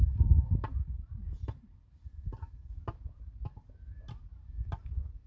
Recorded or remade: recorded